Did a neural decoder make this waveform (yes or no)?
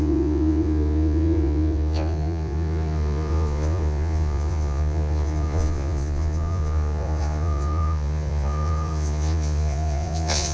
yes